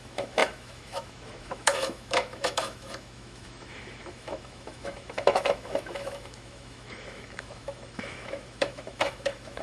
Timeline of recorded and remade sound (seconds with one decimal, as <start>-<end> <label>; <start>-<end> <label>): 0.0-9.6 remade